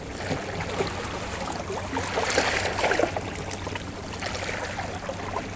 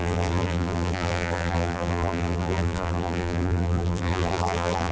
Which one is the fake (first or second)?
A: second